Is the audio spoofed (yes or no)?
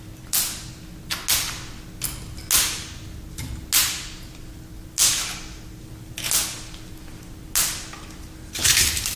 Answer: no